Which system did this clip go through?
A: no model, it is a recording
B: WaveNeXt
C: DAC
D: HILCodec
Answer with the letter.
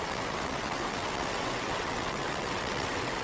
B